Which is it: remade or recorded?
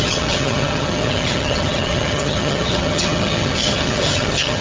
remade